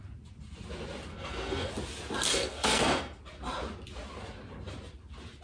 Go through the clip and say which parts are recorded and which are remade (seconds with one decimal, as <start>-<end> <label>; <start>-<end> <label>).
0.0-1.1 recorded; 1.1-1.7 remade; 1.7-2.3 recorded; 2.3-3.2 remade; 3.2-5.4 recorded

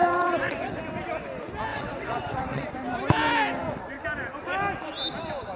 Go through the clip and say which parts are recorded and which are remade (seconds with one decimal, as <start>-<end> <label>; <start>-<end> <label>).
0.0-0.8 remade; 0.8-1.7 recorded; 1.7-2.7 remade; 2.7-5.6 recorded

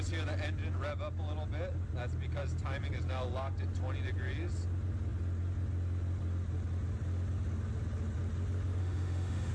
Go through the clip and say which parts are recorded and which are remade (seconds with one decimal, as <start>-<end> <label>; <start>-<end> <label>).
0.0-8.8 recorded; 8.8-9.5 remade

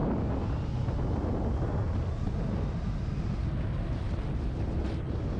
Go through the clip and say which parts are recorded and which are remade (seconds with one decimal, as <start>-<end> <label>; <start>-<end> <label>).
0.0-5.4 recorded

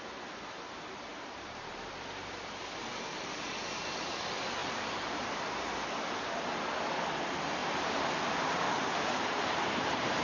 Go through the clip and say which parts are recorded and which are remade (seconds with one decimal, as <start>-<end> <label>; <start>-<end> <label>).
0.0-1.1 recorded; 1.1-1.9 remade; 1.9-2.9 recorded; 2.9-3.5 remade; 3.5-4.6 recorded; 4.6-5.2 remade; 5.2-7.6 recorded; 7.6-10.2 remade